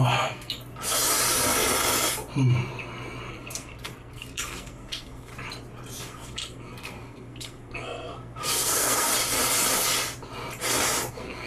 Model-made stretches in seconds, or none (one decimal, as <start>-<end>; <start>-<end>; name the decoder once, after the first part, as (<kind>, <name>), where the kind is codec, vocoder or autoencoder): 0.0-0.6 (codec, SNAC); 3.3-5.3; 6.0-9.1; 11.1-11.5

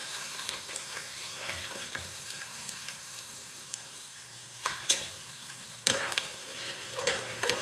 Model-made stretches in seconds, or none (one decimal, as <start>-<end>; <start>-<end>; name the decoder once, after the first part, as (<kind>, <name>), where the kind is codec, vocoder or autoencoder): 0.0-7.6 (codec, SNAC)

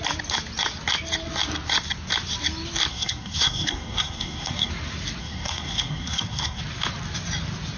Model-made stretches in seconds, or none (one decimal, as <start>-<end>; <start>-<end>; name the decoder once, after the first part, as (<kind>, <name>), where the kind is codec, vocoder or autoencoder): 2.9-4.7 (codec, SNAC); 5.2-6.6